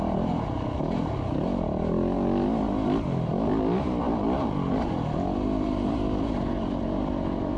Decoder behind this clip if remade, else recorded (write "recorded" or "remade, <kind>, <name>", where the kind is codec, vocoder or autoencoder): recorded